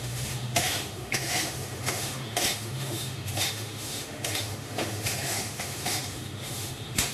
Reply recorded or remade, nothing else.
remade